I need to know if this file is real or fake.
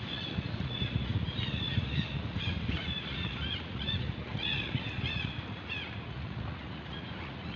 fake